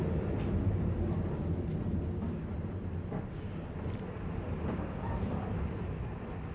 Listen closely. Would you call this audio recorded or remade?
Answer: recorded